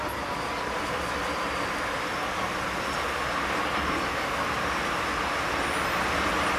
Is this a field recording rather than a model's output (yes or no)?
yes